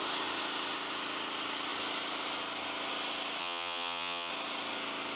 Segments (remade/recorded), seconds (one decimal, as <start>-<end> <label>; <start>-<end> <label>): 0.0-3.4 recorded; 3.4-4.3 remade; 4.3-5.2 recorded